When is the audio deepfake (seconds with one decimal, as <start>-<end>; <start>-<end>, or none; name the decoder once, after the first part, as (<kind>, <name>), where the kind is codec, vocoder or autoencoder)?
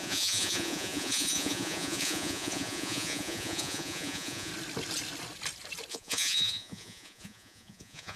0.0-4.5 (vocoder, Vocos); 5.9-8.2